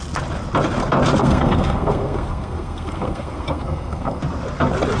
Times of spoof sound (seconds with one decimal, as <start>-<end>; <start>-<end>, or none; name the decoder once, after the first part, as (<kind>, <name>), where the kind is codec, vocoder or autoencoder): 1.2-4.2 (codec, SNAC)